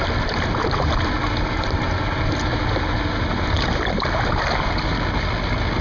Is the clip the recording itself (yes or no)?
yes